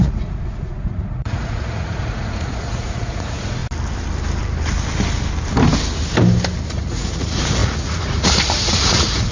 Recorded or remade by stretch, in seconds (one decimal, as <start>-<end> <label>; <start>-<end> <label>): 0.0-3.6 remade; 3.6-6.7 recorded; 6.7-9.3 remade